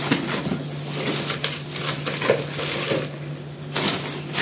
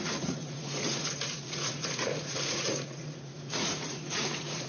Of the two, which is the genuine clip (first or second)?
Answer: first